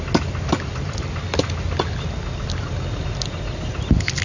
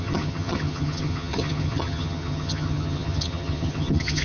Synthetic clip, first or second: second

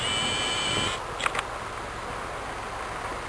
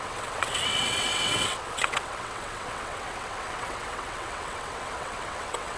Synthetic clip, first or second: second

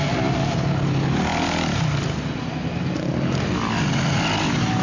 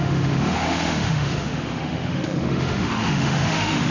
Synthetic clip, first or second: second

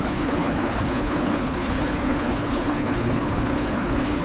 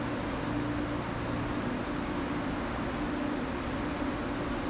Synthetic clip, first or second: first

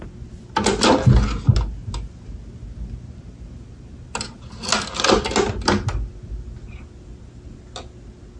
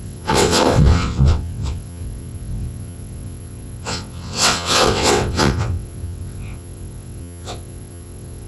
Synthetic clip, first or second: second